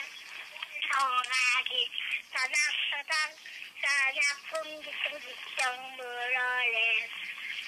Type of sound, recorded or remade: recorded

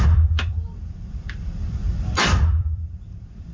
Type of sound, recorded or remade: remade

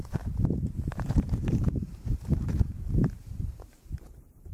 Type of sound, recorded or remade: remade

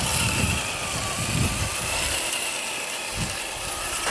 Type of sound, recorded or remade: recorded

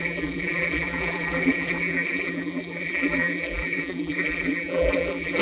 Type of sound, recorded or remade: remade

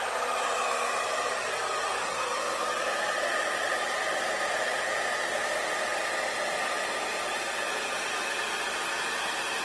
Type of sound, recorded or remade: recorded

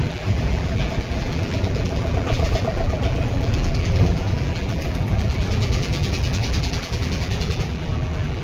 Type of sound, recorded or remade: remade